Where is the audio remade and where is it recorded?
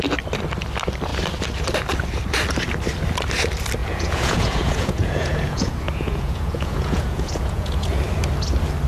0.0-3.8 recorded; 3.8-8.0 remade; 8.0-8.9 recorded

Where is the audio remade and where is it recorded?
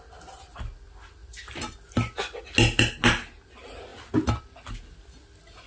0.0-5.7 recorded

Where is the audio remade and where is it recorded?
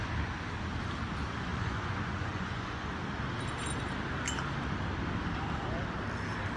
0.0-1.5 recorded; 1.5-2.9 remade; 2.9-6.6 recorded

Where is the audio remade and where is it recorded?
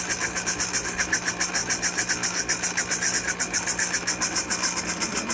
0.0-5.3 recorded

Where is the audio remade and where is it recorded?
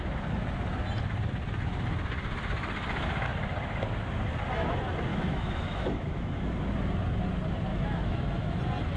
0.0-5.1 recorded; 5.1-6.5 remade; 6.5-7.7 recorded; 7.7-8.6 remade; 8.6-9.0 recorded